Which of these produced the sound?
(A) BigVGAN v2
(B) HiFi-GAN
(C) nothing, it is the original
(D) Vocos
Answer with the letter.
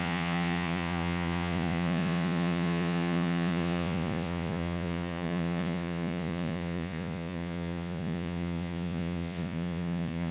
D